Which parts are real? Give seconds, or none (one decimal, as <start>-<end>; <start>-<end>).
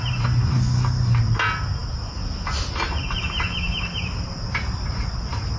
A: 0.0-5.6